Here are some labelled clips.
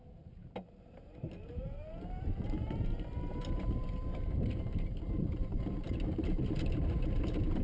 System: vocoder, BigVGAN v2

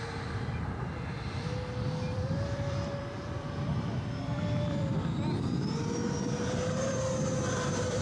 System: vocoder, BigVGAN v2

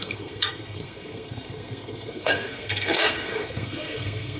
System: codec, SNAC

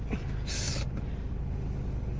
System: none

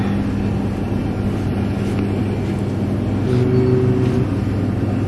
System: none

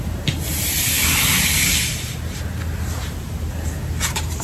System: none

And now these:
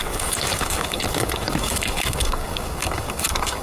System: codec, DAC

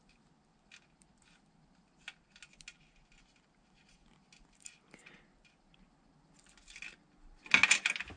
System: none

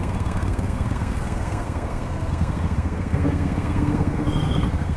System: codec, SNAC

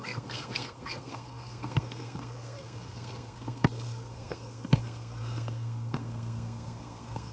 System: codec, SNAC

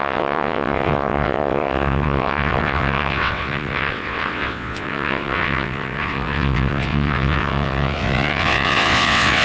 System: vocoder, WaveNeXt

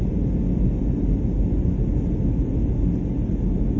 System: none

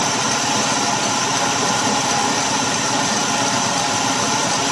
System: vocoder, BigVGAN v2